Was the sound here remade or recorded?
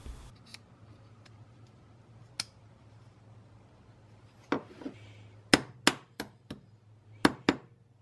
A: recorded